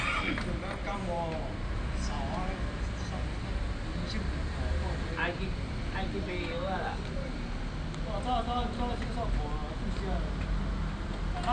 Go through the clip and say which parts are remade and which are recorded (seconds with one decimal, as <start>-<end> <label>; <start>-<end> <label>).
0.0-11.5 recorded